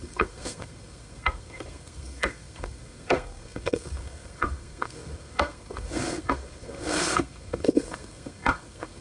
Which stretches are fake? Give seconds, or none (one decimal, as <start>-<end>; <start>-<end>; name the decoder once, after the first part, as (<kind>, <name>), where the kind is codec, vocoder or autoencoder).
0.0-9.0 (codec, SNAC)